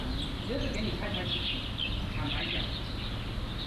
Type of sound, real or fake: real